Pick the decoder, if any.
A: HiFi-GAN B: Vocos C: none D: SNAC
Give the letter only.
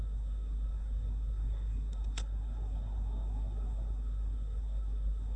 D